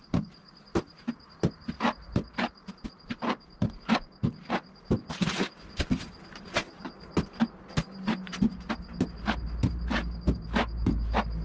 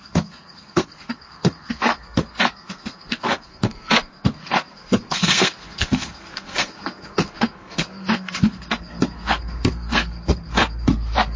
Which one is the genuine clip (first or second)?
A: first